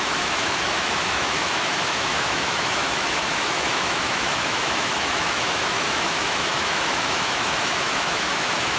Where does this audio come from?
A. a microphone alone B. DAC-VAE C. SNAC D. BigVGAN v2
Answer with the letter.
B